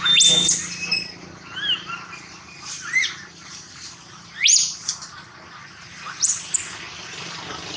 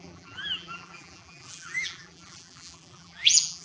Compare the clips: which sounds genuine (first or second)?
first